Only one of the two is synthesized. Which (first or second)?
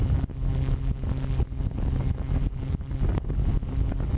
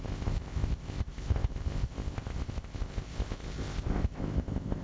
second